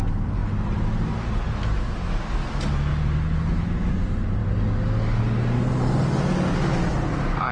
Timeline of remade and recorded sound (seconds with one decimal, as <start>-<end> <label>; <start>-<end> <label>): 0.0-7.5 recorded